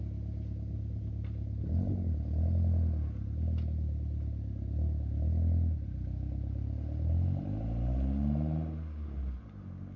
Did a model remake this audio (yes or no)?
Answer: no